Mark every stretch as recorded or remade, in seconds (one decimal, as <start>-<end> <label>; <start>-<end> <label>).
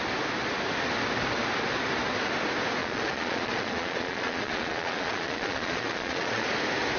0.0-2.8 recorded; 2.8-6.5 remade; 6.5-7.0 recorded